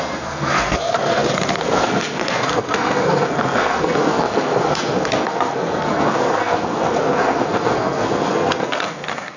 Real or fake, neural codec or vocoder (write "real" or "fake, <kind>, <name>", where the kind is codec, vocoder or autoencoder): fake, codec, SNAC